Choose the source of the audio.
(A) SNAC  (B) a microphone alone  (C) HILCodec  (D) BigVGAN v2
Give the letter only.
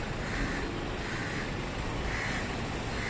B